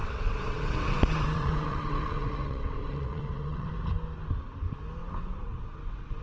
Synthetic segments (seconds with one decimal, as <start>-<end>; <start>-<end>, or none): 0.0-3.7; 5.0-6.2